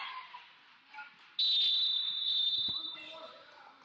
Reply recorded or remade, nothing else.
recorded